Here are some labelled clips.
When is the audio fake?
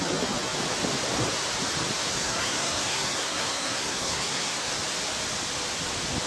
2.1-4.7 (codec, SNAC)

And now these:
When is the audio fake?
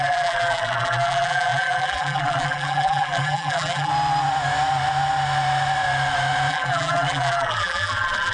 0.0-3.9 (vocoder, BigVGAN v2); 6.5-8.3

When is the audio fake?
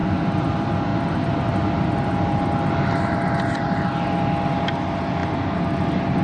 none